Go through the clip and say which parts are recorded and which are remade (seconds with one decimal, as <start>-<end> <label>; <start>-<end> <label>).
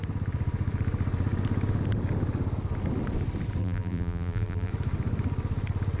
0.0-3.6 recorded; 3.6-4.7 remade; 4.7-6.0 recorded